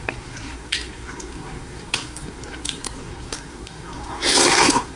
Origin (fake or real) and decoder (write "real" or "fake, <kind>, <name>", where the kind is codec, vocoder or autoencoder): fake, codec, SNAC